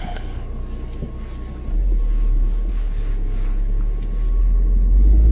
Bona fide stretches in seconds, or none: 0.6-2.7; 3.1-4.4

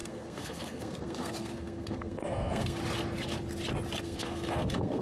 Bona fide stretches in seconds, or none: 2.8-4.0

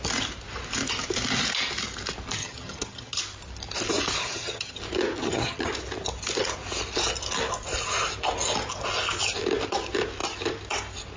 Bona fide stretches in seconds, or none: 0.0-2.4; 3.2-4.2; 4.8-5.2; 5.7-11.2